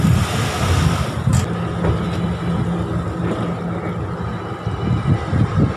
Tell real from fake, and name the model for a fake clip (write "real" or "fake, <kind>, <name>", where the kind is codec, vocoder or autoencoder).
real